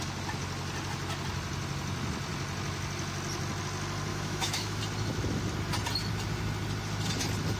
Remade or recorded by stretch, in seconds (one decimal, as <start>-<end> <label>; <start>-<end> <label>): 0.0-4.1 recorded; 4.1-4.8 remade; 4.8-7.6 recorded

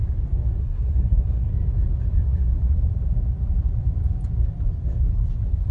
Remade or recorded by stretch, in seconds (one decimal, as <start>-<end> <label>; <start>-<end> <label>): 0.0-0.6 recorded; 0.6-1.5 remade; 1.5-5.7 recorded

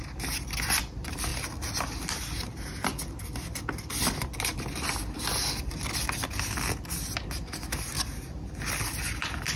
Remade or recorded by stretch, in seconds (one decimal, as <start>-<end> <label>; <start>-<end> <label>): 0.0-9.6 recorded

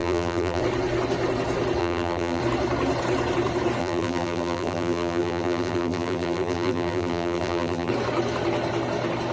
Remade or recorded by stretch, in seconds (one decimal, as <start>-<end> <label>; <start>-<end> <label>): 0.0-0.6 remade; 0.6-1.8 recorded; 1.8-2.4 remade; 2.4-3.8 recorded; 3.8-7.9 remade; 7.9-9.3 recorded